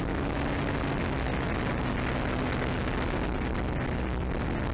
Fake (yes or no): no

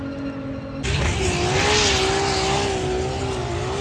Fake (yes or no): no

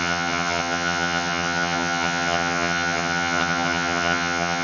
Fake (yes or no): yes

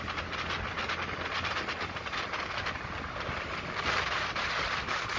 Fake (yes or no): no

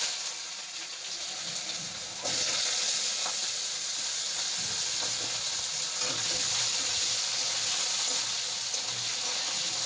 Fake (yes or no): no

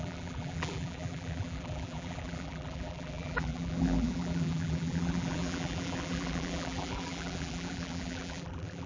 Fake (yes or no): yes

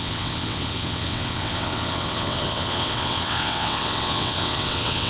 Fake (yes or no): yes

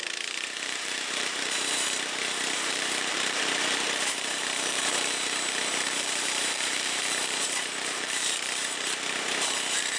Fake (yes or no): yes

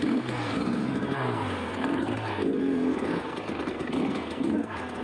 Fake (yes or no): yes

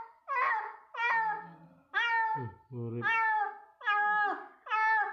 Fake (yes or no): no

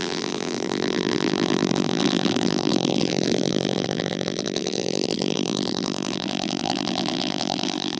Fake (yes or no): yes